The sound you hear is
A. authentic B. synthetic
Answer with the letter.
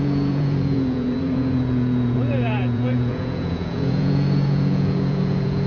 B